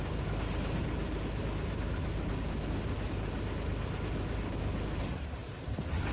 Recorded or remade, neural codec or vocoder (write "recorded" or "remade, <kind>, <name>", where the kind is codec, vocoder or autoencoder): recorded